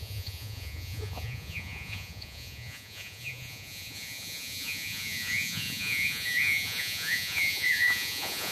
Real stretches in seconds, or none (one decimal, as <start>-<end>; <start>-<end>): none